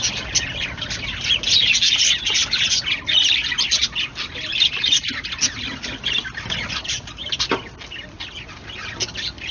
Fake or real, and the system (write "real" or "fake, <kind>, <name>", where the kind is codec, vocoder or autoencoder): real